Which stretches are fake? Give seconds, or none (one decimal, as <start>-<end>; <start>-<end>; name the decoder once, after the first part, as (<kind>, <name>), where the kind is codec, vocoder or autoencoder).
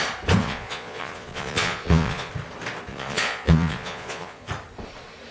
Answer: 0.4-2.3 (vocoder, Vocos); 2.9-4.5